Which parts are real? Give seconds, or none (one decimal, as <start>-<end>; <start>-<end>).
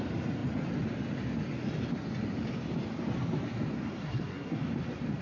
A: 0.0-4.0; 4.6-5.2